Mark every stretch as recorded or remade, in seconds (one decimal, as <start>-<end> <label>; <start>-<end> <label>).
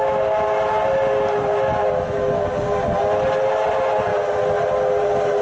0.0-5.4 recorded